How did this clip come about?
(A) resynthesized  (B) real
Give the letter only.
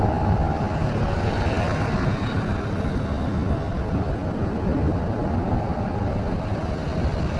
B